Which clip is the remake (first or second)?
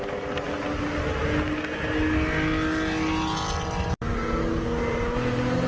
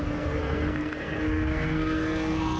second